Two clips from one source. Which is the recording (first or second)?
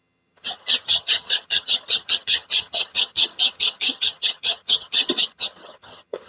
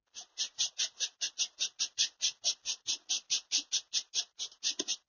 second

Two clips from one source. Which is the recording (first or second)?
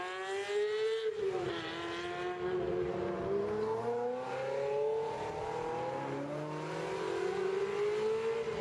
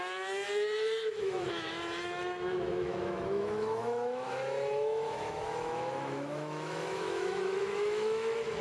first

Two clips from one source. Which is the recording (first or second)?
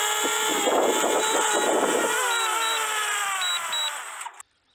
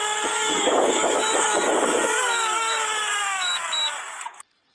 first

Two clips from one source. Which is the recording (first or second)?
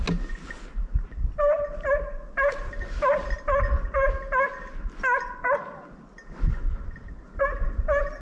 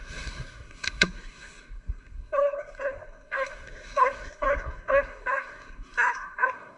first